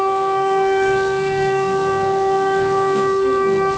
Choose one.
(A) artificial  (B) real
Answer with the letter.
A